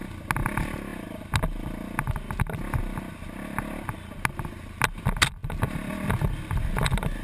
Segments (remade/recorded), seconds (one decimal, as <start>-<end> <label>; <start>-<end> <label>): 0.0-7.2 recorded